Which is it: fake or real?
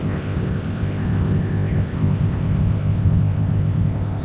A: fake